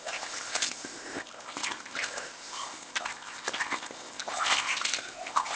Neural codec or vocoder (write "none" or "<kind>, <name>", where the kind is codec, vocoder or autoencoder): codec, ZipCodec